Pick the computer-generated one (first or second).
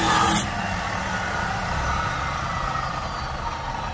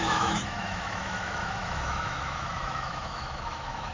second